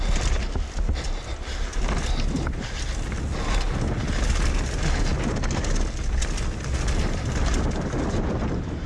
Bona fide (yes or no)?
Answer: yes